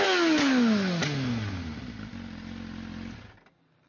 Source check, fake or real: real